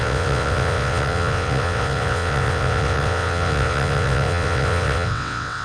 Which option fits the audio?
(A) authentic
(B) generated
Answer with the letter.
B